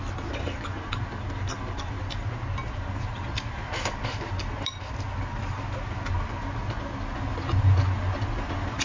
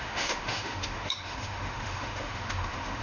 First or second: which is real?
first